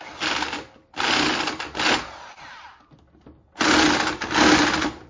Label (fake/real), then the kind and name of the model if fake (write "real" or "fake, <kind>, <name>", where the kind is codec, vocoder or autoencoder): real